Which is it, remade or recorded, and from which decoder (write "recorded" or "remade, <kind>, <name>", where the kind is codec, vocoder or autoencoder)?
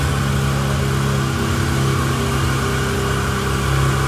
recorded